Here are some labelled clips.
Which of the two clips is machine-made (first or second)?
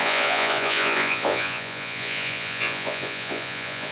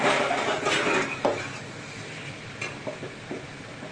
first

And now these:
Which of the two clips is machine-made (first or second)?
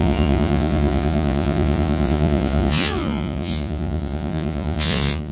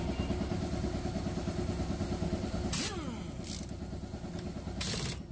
first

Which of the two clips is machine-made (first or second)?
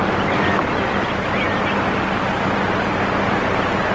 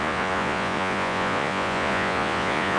second